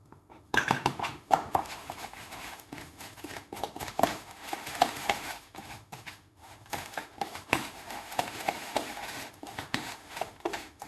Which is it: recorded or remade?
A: remade